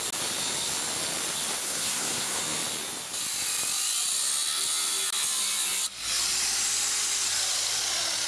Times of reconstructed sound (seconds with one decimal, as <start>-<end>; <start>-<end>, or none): 1.6-2.4